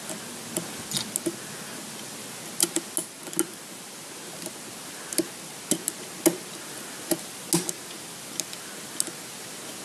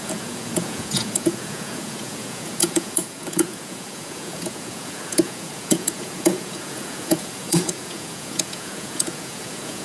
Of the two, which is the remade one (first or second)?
second